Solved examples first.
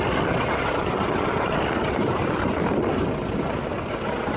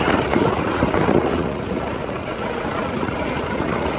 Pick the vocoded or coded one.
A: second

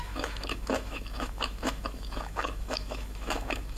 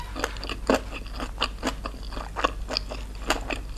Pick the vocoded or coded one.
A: first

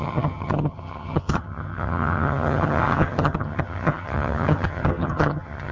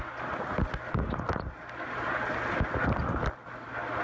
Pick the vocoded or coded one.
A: first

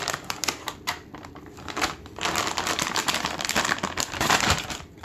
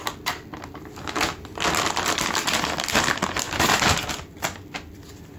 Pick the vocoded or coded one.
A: first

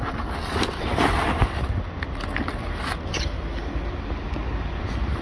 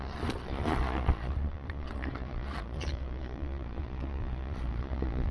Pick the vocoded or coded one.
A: second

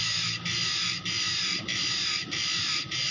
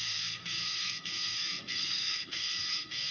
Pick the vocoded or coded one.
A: second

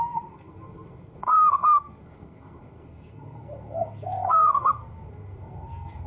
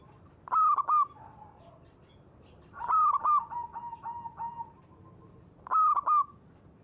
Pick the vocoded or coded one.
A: first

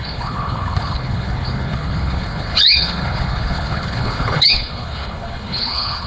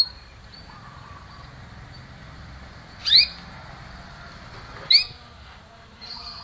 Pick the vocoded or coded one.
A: first